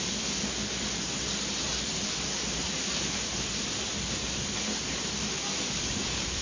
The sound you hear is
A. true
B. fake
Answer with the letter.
A